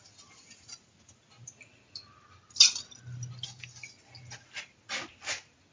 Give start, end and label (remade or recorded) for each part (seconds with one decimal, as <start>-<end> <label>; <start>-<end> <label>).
0.0-5.7 recorded